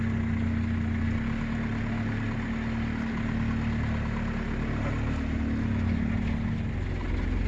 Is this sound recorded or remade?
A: recorded